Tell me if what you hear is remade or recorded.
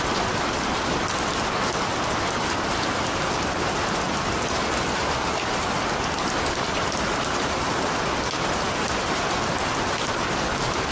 recorded